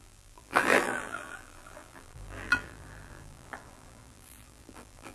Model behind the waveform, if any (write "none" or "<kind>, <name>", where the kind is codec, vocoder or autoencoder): vocoder, BigVGAN v2